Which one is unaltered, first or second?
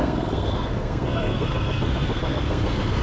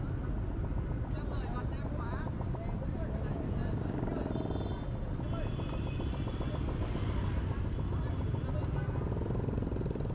second